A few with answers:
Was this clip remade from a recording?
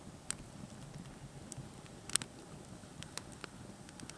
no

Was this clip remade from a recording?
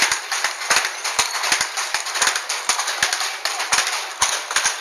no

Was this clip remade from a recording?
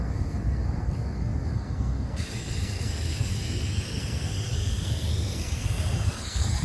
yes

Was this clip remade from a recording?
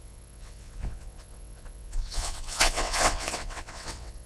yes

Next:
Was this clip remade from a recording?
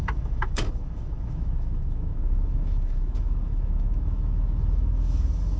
yes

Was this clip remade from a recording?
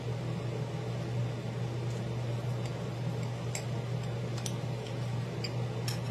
no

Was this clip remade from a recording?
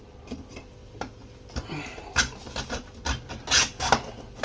no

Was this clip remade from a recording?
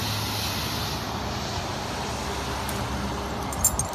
no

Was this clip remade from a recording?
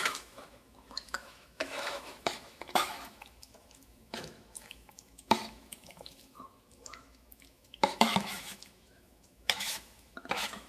yes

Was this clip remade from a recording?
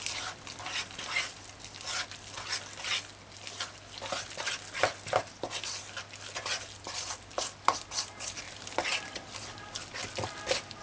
no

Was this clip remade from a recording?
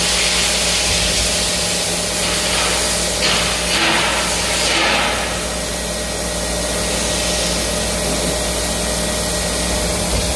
no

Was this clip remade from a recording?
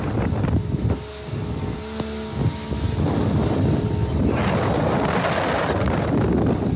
no